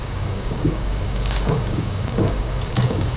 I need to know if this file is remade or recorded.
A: remade